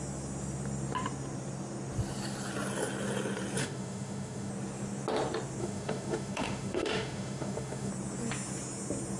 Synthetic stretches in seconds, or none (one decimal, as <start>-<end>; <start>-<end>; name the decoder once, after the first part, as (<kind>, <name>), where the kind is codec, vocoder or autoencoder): 3.6-4.5 (autoencoder, DAC-VAE); 5.6-7.9